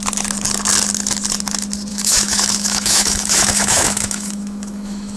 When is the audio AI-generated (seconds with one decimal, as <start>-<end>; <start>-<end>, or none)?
1.9-5.2